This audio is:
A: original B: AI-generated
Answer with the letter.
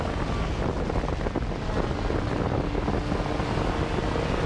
A